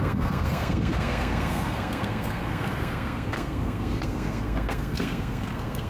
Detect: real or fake fake